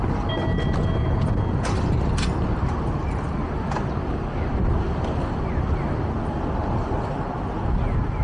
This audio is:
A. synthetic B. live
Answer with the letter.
B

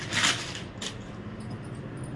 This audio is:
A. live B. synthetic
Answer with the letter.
A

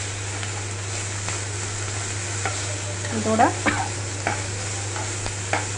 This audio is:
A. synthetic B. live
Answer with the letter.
B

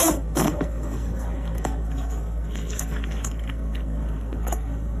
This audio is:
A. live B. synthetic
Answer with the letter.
B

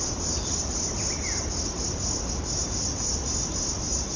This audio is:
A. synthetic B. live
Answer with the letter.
B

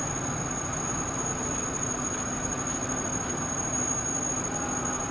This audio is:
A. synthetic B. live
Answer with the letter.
B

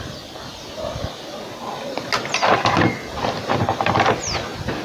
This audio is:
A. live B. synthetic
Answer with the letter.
A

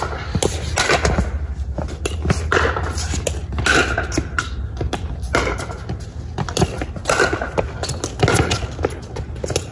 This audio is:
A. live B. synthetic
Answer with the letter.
A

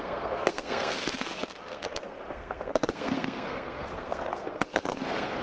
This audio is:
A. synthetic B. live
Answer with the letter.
A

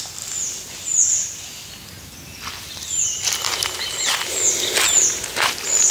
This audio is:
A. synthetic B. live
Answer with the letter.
B